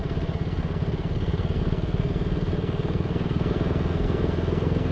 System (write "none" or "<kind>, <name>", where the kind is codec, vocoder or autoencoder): codec, SNAC